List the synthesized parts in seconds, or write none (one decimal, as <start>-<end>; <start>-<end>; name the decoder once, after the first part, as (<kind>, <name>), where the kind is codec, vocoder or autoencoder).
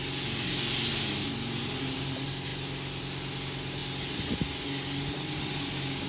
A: none